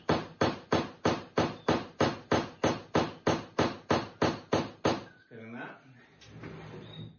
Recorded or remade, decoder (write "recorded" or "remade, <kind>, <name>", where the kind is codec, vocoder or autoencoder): recorded